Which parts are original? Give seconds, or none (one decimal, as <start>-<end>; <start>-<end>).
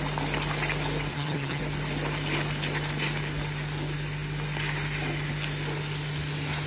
0.0-1.1; 1.6-6.7